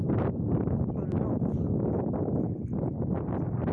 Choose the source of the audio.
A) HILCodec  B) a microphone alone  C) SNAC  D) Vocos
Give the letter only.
B